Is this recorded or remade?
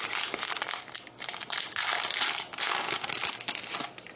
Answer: recorded